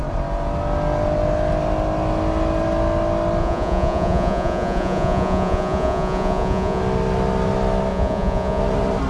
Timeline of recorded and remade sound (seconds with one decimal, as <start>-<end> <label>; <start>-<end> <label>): 0.0-3.4 recorded; 3.4-6.8 remade; 6.8-7.9 recorded; 7.9-8.6 remade; 8.6-9.1 recorded